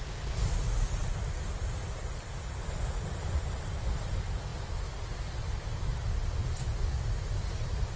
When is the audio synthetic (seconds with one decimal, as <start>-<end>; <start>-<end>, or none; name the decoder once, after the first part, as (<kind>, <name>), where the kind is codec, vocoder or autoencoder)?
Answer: none